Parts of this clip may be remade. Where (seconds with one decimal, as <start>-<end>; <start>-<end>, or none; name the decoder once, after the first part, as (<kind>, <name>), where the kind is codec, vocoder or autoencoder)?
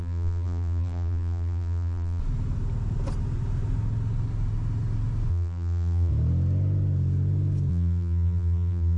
0.0-2.2 (vocoder, BigVGAN v2); 5.3-6.1; 7.7-9.0